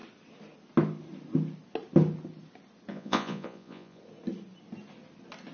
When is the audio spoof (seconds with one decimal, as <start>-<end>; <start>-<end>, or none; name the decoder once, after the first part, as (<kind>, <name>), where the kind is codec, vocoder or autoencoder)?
2.9-4.0 (vocoder, Vocos)